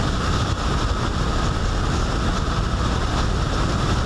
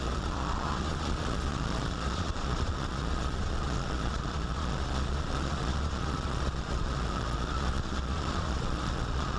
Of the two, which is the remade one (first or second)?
second